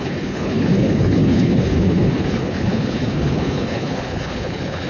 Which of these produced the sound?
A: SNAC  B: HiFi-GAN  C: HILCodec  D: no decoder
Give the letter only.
C